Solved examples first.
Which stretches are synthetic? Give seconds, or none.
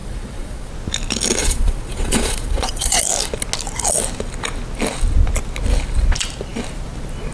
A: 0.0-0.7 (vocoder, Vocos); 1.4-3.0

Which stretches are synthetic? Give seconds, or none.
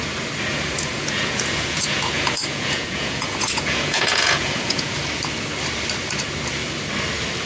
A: 0.5-5.0 (vocoder, Vocos)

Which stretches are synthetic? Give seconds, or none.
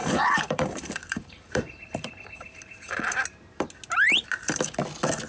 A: 0.0-3.2 (vocoder, BigVGAN v2)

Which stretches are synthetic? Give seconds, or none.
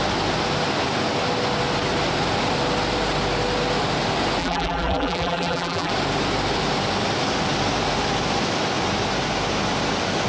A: 4.4-5.9 (vocoder, BigVGAN v2)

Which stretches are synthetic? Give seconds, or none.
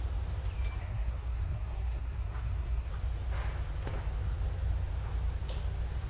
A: 0.8-2.9 (codec, SNAC)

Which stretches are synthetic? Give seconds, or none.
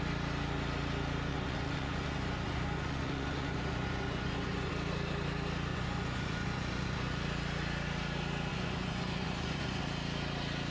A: 1.3-4.7 (vocoder, Vocos); 5.7-7.2; 8.5-9.8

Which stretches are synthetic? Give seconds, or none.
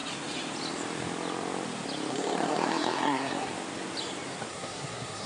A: 2.1-3.5 (codec, SNAC); 4.5-5.3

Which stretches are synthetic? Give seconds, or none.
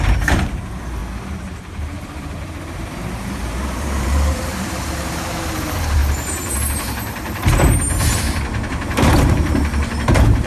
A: 0.0-7.4 (vocoder, BigVGAN v2); 8.7-10.5